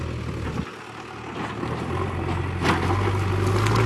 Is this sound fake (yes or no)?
no